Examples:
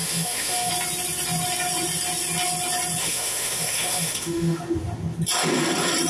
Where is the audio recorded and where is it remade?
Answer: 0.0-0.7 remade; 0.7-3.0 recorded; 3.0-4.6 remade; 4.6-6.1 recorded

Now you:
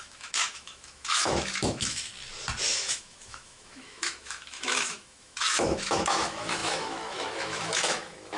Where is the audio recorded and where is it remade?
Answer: 0.0-2.1 remade; 2.1-2.7 recorded; 2.7-8.4 remade

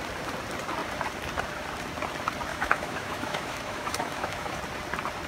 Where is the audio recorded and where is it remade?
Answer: 0.0-2.5 recorded; 2.5-4.6 remade; 4.6-5.3 recorded

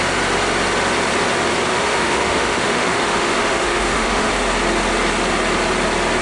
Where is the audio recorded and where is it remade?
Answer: 0.0-1.7 recorded; 1.7-4.3 remade; 4.3-6.2 recorded

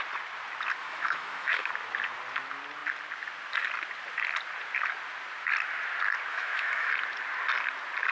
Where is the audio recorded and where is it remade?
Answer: 0.0-0.8 recorded; 0.8-1.7 remade; 1.7-6.3 recorded; 6.3-6.9 remade; 6.9-8.1 recorded